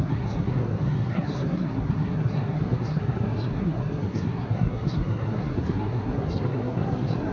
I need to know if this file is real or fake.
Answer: fake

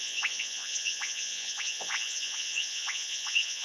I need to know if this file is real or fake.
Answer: fake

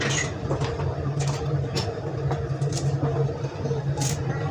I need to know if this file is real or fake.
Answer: real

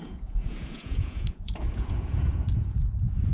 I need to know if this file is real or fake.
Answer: fake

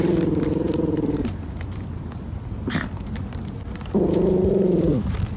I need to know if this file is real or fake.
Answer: real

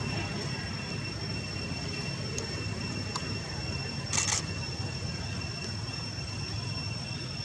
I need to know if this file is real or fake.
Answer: real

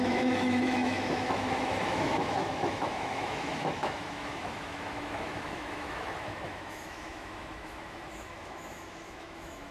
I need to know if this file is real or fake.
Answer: fake